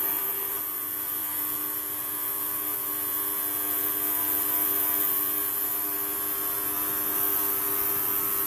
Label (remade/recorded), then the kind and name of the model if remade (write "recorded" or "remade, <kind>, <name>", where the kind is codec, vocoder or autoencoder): recorded